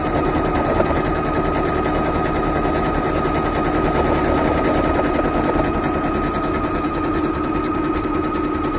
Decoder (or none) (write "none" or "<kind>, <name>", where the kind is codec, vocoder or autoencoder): none